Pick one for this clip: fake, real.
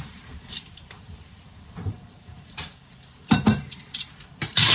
fake